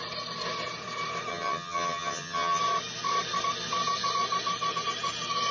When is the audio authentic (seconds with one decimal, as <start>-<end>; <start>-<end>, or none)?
0.0-1.3; 2.6-5.5